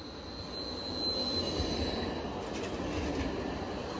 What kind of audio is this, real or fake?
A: real